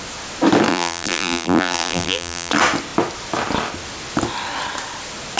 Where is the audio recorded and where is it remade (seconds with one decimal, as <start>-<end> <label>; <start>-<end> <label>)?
0.0-0.7 recorded; 0.7-2.5 remade; 2.5-5.4 recorded